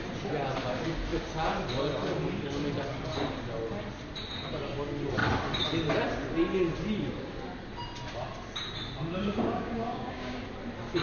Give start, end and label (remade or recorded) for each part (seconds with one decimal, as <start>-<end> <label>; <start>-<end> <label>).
0.0-9.2 recorded; 9.2-10.4 remade; 10.4-11.0 recorded